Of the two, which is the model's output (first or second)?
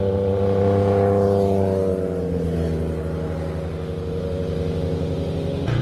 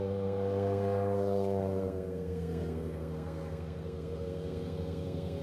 second